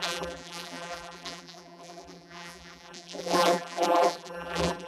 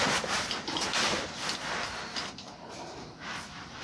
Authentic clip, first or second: second